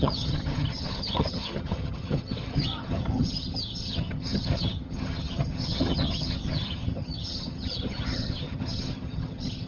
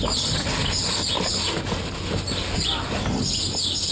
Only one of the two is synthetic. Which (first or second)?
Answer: first